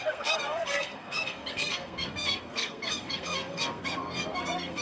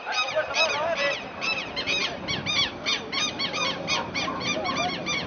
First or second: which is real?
second